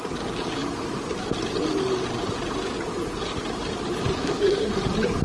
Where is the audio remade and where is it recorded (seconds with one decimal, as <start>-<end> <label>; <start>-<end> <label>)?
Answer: 0.0-4.2 recorded; 4.2-4.7 remade; 4.7-5.2 recorded